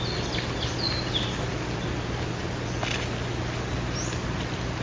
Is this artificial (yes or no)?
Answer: no